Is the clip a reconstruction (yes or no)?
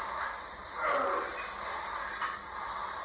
no